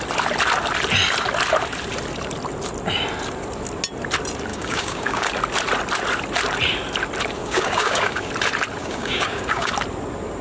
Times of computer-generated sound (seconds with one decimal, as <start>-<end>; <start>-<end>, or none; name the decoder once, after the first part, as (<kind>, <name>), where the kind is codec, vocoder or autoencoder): 4.5-5.3 (codec, DAC); 7.4-8.3; 8.8-9.7